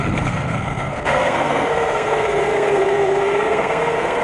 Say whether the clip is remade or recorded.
remade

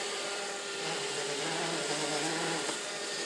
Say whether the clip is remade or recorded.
remade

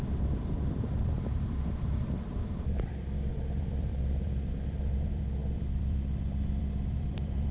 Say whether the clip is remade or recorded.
remade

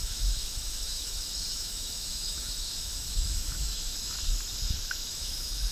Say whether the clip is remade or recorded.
remade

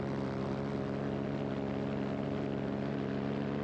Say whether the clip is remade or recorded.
recorded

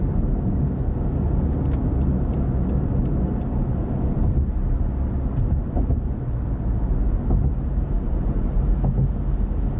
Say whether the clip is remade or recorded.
recorded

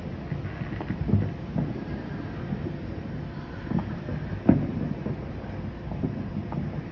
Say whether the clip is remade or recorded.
recorded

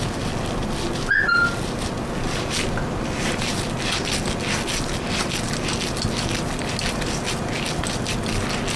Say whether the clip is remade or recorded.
recorded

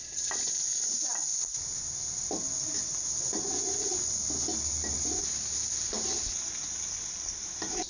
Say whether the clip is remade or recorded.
recorded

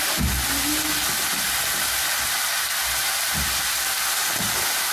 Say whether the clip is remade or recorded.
recorded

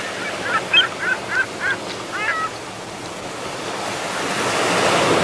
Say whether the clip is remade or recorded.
recorded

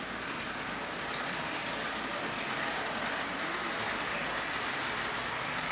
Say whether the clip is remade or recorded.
recorded